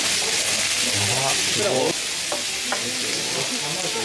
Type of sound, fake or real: real